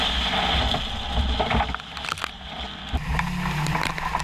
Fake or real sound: real